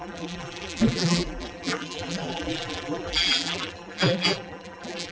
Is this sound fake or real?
fake